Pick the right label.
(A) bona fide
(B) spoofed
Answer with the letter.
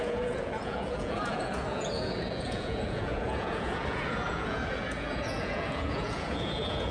B